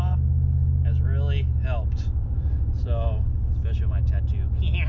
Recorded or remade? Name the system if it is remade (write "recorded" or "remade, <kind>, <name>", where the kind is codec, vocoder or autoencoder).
recorded